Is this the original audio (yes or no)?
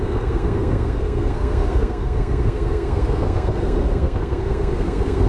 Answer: no